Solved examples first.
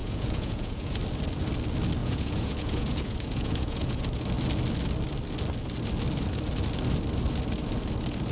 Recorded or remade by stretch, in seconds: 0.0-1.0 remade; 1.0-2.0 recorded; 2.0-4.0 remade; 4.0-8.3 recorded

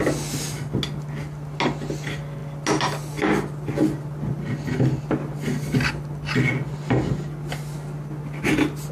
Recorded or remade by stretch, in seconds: 0.0-8.9 recorded